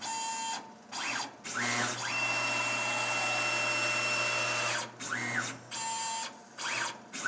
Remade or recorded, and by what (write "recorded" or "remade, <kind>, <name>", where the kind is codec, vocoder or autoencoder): recorded